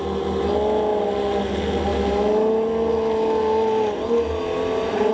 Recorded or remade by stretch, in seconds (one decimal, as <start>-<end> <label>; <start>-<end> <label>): 0.0-5.1 recorded